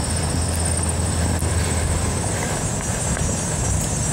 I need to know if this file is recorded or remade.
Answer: recorded